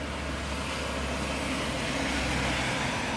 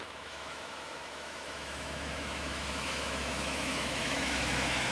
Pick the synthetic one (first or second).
second